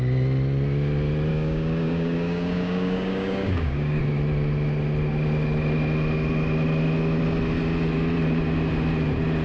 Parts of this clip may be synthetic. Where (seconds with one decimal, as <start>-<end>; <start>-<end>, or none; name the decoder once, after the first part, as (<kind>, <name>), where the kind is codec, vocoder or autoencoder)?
1.3-4.0 (codec, DAC)